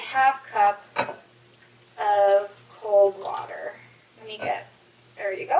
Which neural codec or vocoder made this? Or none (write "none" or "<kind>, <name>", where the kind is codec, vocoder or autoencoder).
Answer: none